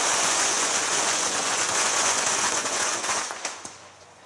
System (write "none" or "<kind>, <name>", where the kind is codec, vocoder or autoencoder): vocoder, Vocos